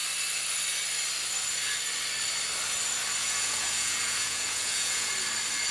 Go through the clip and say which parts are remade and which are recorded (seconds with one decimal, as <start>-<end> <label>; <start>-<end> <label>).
0.0-3.2 recorded; 3.2-5.1 remade; 5.1-5.7 recorded